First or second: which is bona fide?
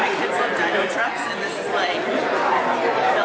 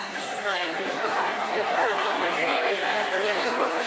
first